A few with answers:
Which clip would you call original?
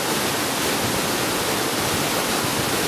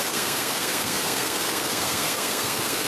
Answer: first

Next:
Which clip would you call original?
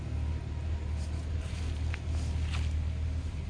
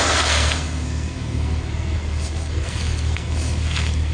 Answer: first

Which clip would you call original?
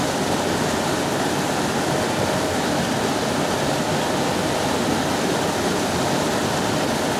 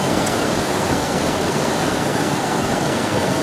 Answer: first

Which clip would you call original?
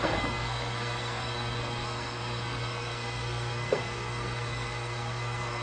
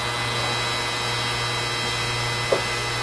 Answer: second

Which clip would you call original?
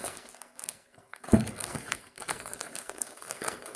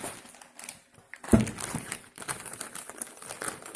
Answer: second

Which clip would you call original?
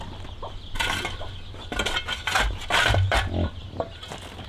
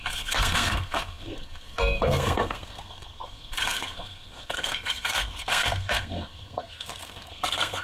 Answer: first